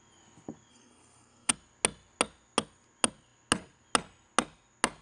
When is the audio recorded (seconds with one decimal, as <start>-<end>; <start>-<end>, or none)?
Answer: 0.0-0.7; 1.5-5.0